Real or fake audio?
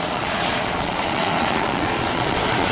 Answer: fake